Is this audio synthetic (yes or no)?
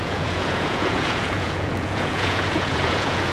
yes